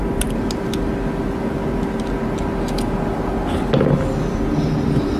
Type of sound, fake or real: real